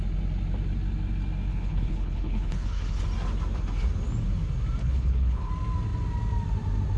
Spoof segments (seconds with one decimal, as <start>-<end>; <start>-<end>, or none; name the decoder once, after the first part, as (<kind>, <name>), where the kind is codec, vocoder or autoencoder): 1.5-3.0 (codec, HILCodec); 4.8-5.5